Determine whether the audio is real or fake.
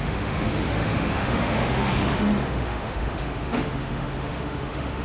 fake